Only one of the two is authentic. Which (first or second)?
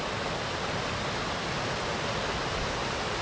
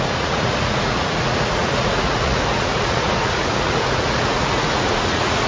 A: first